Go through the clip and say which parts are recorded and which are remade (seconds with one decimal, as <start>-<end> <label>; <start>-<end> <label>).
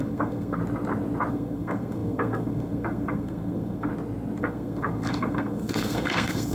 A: 0.0-0.6 remade; 0.6-1.3 recorded; 1.3-3.9 remade; 3.9-4.4 recorded; 4.4-6.5 remade